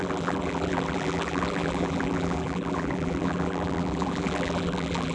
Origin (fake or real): fake